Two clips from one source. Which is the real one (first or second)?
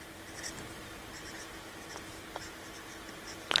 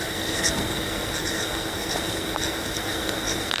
first